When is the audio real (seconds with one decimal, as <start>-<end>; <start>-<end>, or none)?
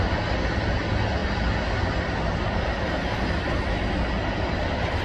0.0-5.0